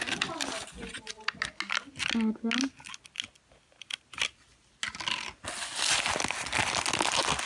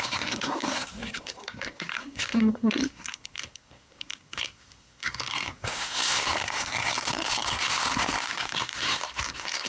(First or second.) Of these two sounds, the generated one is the second